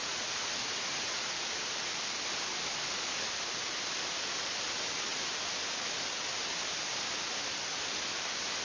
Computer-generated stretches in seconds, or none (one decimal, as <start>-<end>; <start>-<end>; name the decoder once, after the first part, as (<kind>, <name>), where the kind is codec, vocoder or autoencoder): 0.0-1.4 (vocoder, Vocos)

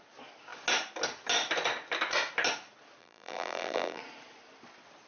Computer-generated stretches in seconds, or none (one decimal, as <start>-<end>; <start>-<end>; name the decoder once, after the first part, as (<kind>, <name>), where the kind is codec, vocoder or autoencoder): 3.0-4.0 (vocoder, BigVGAN v2)

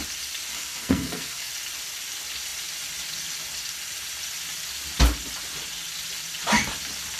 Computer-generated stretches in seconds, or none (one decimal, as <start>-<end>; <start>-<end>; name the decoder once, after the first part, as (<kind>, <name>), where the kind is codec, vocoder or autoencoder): 0.5-1.5 (codec, SNAC)